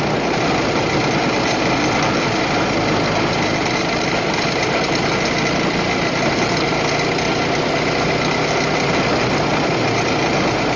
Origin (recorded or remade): recorded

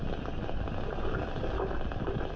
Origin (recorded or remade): recorded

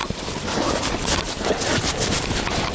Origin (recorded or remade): recorded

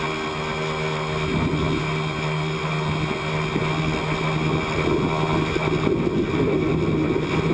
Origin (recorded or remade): recorded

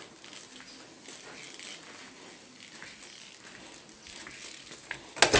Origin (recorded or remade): recorded